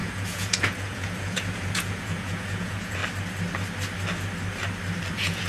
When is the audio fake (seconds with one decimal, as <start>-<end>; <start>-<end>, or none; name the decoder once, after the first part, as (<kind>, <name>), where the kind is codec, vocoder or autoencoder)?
0.0-3.0 (vocoder, Vocos); 5.1-5.5